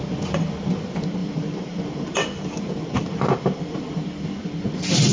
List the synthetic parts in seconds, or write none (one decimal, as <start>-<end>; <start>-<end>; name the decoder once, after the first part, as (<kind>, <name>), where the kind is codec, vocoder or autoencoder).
1.2-4.1 (vocoder, BigVGAN v2)